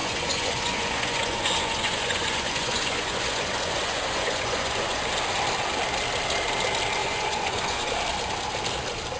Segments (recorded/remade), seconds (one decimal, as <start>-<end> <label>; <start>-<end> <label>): 0.0-5.0 remade; 5.0-7.0 recorded; 7.0-7.9 remade; 7.9-9.2 recorded